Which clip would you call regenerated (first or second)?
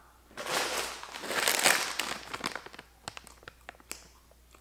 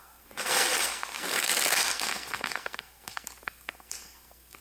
second